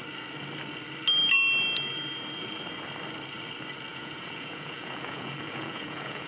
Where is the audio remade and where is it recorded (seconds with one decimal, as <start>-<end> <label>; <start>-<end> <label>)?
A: 0.0-3.9 recorded; 3.9-6.3 remade